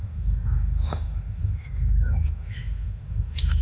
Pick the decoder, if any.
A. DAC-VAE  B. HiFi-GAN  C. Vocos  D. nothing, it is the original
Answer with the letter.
A